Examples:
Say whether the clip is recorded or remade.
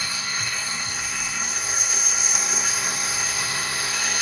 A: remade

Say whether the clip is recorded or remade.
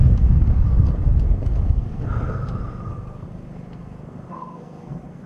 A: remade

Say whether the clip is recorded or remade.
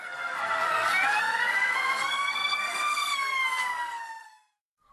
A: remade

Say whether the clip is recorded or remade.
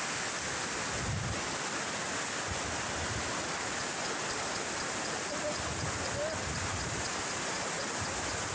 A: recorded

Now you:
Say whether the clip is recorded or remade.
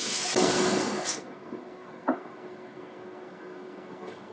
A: remade